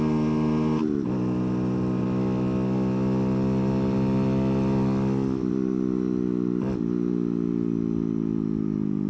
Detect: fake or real real